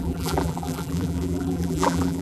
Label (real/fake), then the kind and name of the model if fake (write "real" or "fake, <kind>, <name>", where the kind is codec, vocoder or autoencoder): fake, vocoder, BigVGAN v2